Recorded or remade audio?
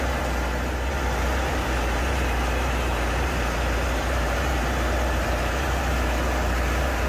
remade